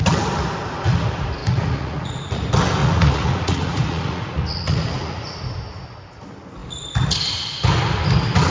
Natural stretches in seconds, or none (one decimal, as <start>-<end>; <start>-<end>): 0.0-1.4; 2.4-2.8; 5.4-8.5